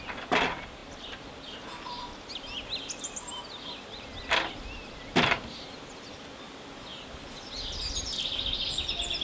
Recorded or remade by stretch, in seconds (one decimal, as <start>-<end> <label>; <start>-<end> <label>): 0.0-9.2 recorded